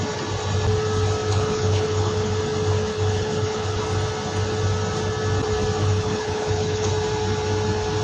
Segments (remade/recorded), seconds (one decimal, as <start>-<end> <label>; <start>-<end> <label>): 0.0-1.3 recorded; 1.3-2.4 remade; 2.4-2.9 recorded; 2.9-3.8 remade; 3.8-5.8 recorded; 5.8-6.9 remade; 6.9-8.0 recorded